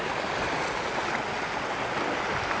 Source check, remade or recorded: recorded